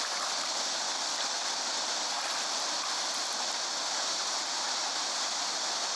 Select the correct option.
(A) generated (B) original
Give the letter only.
A